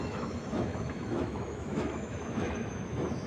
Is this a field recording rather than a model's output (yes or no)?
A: no